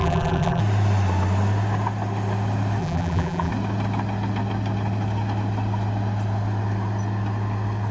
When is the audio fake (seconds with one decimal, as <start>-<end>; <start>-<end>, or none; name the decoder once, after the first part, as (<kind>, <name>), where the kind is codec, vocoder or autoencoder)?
0.0-0.6 (vocoder, BigVGAN v2); 2.8-3.5